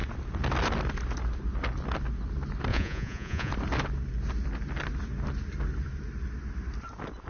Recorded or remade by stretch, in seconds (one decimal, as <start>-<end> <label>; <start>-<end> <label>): 0.0-2.7 recorded; 2.7-3.5 remade; 3.5-7.3 recorded